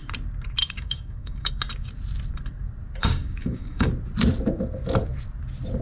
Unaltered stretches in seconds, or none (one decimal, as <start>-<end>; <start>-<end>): 0.0-0.6; 1.5-3.0; 3.9-5.8